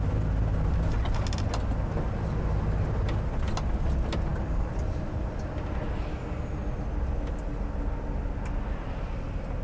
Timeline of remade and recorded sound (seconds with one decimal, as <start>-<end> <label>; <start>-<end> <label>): 0.0-4.3 recorded; 4.3-4.9 remade; 4.9-9.6 recorded